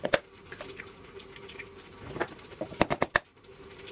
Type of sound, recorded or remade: recorded